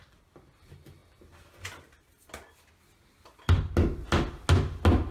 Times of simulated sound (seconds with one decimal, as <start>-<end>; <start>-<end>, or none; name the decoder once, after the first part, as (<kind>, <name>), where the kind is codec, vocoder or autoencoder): none